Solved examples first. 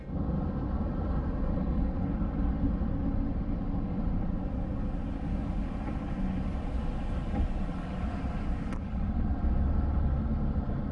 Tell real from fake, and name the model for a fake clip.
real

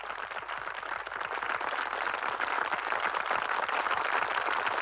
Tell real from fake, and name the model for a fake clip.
real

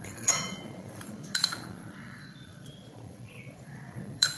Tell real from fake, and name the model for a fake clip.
fake, vocoder, Vocos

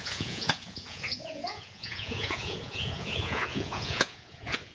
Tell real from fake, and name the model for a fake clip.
fake, vocoder, Vocos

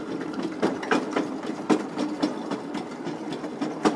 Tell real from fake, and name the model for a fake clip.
real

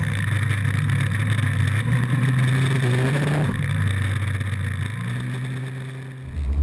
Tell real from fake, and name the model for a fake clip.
real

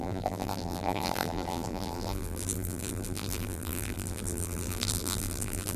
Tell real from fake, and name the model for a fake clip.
fake, vocoder, BigVGAN v2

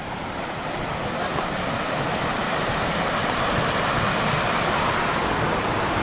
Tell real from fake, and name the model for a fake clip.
real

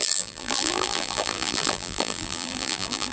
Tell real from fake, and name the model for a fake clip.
fake, vocoder, BigVGAN v2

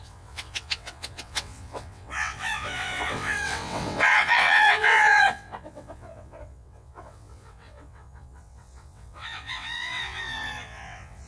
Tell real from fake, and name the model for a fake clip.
fake, vocoder, WaveNeXt